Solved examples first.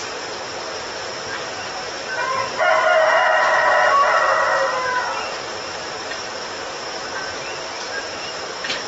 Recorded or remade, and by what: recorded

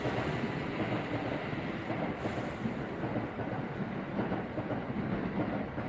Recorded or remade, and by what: recorded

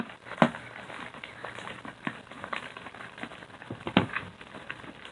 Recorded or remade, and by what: remade, vocoder, BigVGAN v2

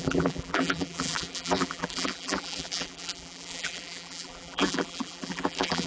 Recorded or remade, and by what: remade, vocoder, BigVGAN v2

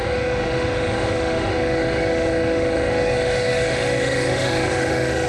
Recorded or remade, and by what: remade, autoencoder, DAC-VAE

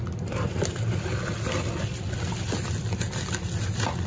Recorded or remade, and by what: recorded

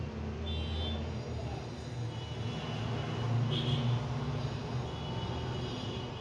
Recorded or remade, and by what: recorded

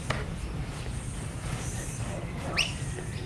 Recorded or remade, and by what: recorded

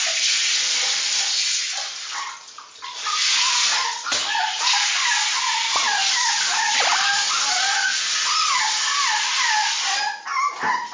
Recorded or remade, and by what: recorded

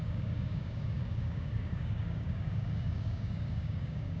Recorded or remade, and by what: remade, codec, DAC